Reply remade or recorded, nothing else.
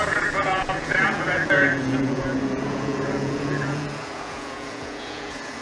remade